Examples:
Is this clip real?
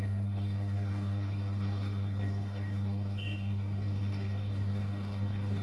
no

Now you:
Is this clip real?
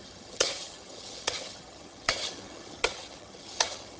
no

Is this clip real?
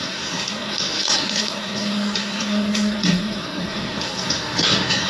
no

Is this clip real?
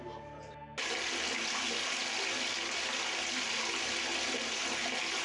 yes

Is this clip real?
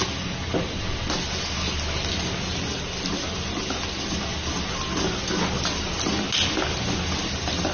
yes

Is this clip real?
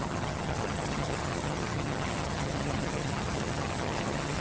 no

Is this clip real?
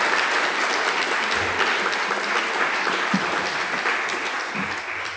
yes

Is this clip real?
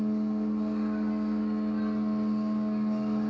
yes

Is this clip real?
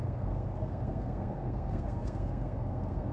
no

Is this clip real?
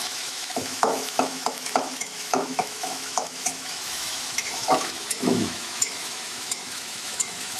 no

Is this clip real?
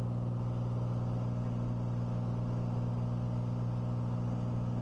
yes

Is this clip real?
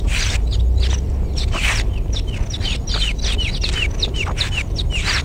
yes